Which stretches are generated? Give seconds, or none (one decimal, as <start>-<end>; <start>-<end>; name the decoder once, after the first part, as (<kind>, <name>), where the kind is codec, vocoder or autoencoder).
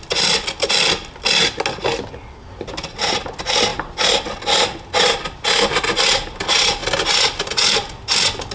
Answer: none